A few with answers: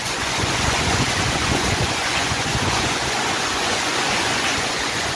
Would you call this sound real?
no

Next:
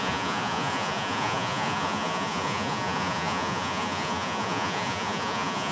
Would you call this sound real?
no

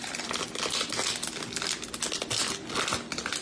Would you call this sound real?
yes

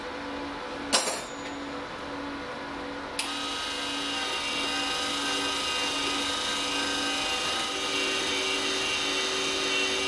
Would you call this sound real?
yes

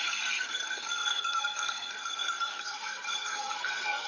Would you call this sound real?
no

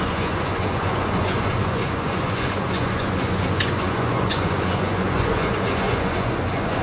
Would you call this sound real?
no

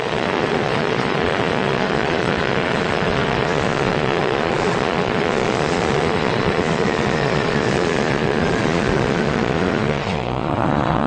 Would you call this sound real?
no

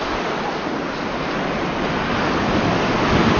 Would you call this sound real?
yes